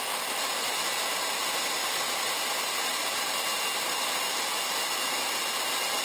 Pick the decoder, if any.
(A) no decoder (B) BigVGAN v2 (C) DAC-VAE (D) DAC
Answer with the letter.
A